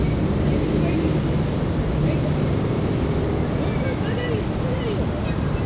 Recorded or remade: recorded